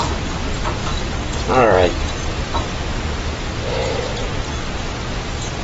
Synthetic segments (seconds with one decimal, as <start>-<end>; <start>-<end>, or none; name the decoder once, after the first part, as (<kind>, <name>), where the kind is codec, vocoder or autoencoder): none